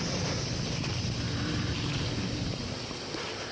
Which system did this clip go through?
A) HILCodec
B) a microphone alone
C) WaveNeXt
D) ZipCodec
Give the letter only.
B